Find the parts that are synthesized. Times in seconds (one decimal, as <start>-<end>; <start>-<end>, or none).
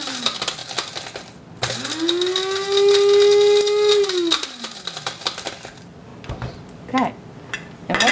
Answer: none